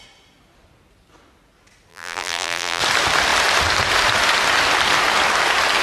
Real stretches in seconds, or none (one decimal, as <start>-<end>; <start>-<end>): 0.0-1.9; 2.8-5.8